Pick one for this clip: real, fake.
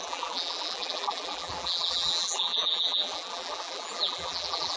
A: fake